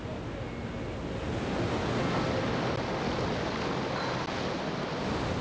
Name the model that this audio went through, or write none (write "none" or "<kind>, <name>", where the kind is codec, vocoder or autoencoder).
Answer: none